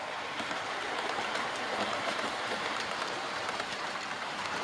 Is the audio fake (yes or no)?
yes